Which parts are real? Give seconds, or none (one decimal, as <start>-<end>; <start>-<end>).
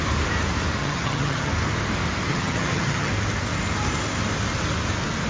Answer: 0.0-0.8; 1.5-2.3; 3.1-5.3